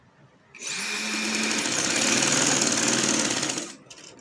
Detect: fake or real real